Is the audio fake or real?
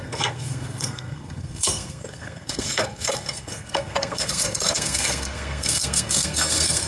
fake